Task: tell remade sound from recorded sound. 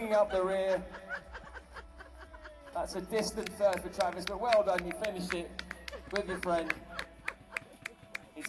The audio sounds recorded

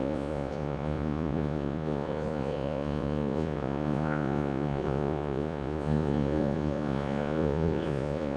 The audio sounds remade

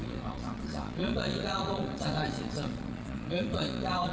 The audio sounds remade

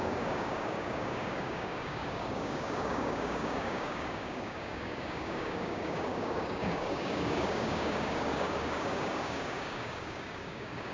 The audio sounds remade